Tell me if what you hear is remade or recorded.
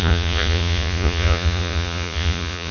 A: remade